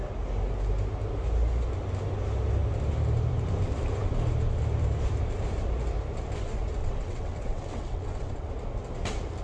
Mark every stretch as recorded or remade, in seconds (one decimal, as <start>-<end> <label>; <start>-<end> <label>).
0.0-6.8 recorded; 6.8-8.5 remade; 8.5-9.4 recorded